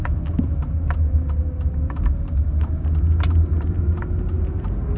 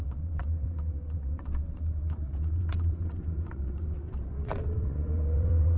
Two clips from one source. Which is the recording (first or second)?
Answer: first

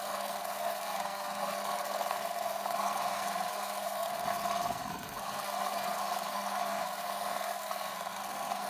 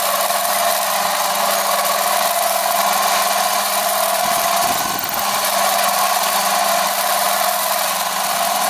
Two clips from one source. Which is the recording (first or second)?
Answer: second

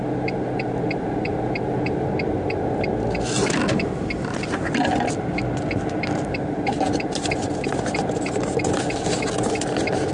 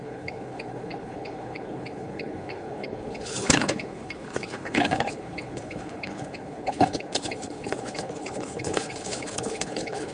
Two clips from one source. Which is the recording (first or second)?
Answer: first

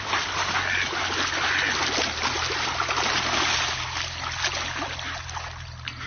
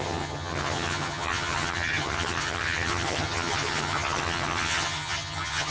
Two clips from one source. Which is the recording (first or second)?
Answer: first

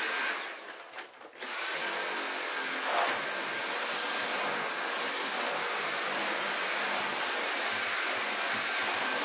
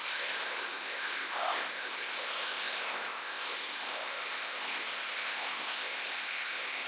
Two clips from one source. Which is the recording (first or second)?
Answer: first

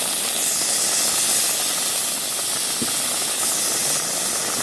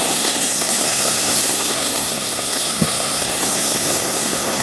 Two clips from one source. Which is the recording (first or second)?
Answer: first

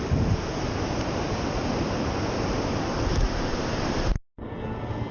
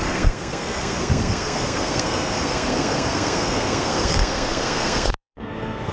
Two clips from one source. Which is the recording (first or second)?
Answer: first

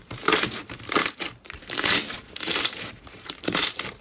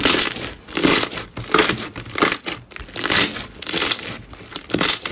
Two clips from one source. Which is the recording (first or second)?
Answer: second